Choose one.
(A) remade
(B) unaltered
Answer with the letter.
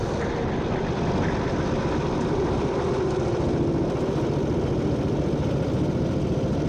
B